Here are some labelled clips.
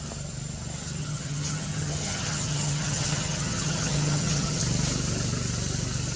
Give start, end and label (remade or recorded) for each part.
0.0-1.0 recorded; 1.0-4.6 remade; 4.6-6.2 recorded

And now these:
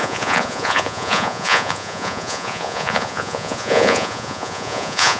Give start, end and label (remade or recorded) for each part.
0.0-5.2 remade